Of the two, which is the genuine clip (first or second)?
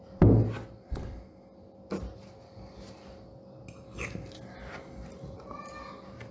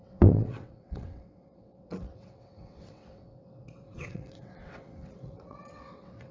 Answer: first